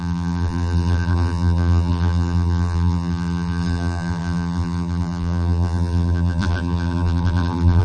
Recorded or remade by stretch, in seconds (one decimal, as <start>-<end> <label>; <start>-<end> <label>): 0.0-7.8 remade